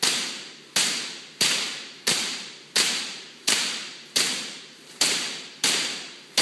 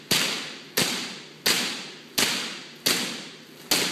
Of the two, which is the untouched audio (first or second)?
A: second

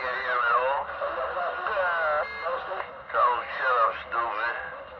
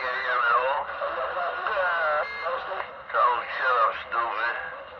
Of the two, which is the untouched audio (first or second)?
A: first